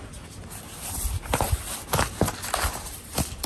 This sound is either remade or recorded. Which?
recorded